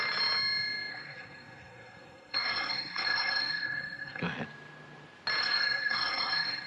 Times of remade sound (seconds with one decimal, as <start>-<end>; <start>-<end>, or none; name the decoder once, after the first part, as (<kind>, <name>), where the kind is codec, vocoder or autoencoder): 0.9-4.2 (codec, SNAC); 5.4-6.7